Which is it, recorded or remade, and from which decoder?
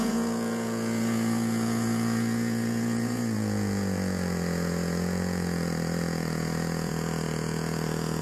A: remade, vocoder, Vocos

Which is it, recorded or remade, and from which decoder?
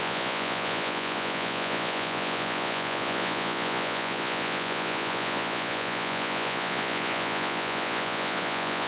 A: remade, vocoder, Vocos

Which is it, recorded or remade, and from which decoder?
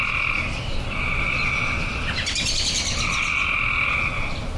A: recorded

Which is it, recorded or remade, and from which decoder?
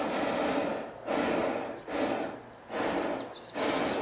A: recorded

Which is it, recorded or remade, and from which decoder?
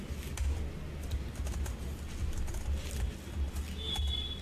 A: recorded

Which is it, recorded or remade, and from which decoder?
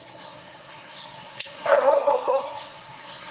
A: remade, codec, SNAC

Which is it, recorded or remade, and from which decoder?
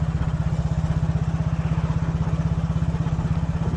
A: recorded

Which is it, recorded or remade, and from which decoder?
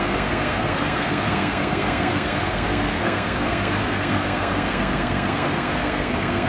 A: remade, codec, SNAC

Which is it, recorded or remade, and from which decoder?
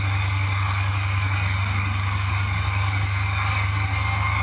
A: remade, codec, DAC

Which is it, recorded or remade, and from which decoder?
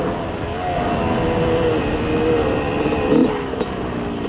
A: recorded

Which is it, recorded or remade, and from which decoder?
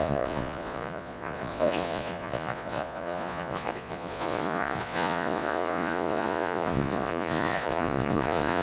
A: remade, vocoder, Vocos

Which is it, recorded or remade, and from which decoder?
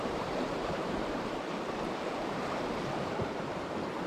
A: remade, vocoder, BigVGAN v2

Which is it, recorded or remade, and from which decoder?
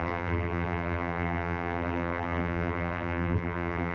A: remade, vocoder, BigVGAN v2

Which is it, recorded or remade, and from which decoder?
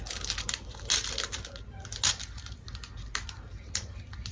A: recorded